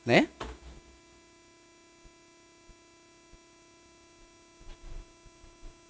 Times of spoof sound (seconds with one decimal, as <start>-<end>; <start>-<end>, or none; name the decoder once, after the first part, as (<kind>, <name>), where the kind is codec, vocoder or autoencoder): none